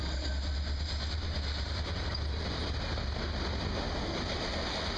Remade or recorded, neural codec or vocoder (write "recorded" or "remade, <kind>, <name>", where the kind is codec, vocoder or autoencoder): recorded